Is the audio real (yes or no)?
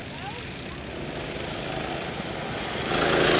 yes